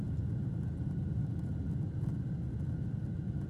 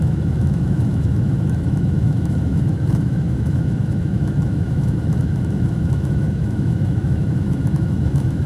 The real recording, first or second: first